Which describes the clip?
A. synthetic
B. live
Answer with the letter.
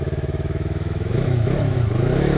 A